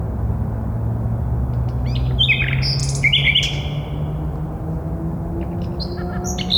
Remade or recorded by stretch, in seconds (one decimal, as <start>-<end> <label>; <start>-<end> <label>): 0.0-6.6 recorded